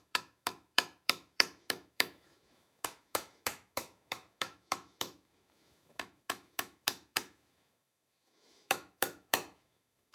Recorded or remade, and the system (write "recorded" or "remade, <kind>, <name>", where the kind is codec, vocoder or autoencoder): remade, autoencoder, DAC-VAE